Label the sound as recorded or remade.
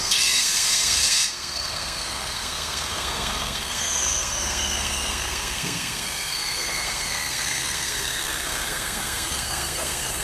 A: remade